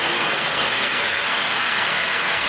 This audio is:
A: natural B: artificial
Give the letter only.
B